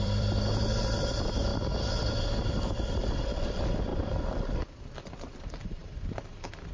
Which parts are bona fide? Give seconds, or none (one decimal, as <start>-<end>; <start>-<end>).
1.5-2.7; 3.9-4.5